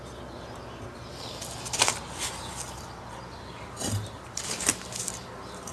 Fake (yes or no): no